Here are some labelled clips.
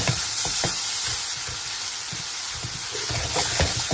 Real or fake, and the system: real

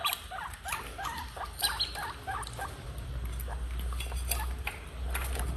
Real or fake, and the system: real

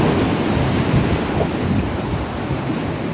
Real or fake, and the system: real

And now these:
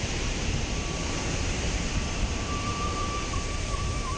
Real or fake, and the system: fake, vocoder, BigVGAN v2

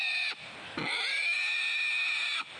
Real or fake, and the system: real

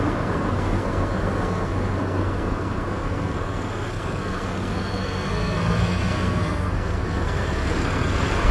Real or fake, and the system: fake, codec, SNAC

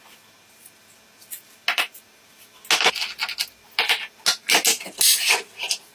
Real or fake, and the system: real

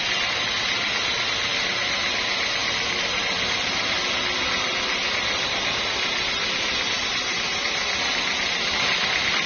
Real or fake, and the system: real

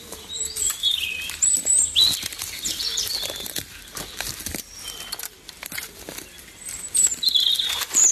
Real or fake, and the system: fake, vocoder, BigVGAN v2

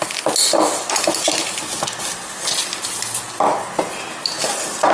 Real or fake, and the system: real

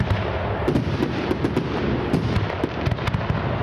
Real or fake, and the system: real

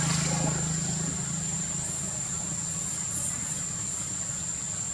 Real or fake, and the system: real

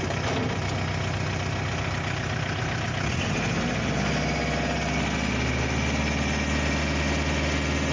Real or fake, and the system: real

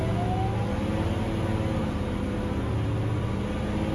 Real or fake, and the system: real